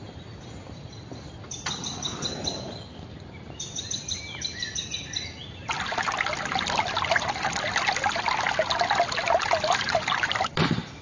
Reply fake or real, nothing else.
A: real